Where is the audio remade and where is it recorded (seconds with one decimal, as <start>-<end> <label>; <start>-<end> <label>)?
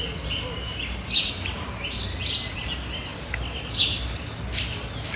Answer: 0.0-5.2 recorded